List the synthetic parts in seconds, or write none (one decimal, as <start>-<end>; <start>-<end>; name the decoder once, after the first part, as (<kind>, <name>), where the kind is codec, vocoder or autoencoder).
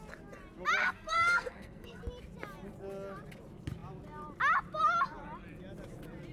0.8-2.0 (codec, SNAC)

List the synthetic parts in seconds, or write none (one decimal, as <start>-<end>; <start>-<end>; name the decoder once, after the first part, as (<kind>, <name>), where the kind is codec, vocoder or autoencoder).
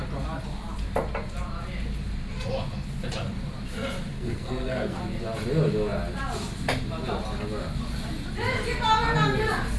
4.1-5.0 (codec, SNAC)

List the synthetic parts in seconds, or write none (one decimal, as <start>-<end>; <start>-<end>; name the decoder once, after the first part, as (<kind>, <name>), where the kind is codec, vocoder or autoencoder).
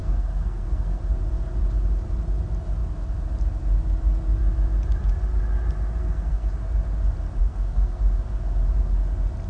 0.0-1.0 (codec, SNAC); 6.0-6.5; 7.4-8.0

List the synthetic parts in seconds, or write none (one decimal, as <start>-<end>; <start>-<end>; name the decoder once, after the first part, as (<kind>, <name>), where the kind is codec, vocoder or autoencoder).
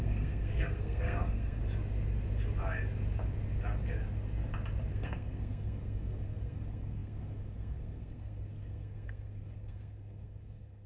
0.0-1.6 (codec, SNAC); 4.9-10.9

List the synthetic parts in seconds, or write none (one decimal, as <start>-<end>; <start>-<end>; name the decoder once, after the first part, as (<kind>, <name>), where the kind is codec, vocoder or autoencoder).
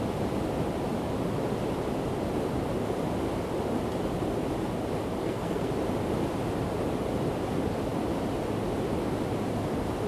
5.2-5.7 (codec, SNAC)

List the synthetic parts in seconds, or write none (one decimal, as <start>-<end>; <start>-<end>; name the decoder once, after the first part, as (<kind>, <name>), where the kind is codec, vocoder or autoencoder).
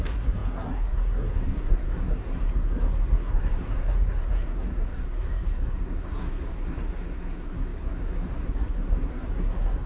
0.0-9.9 (codec, SNAC)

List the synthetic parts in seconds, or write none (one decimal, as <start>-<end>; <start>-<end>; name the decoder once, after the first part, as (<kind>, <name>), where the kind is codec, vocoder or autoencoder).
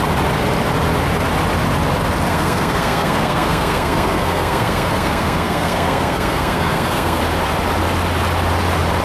2.3-7.2 (codec, SNAC)